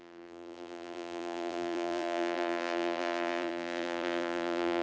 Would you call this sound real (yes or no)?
no